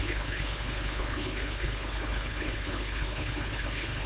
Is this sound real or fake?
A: fake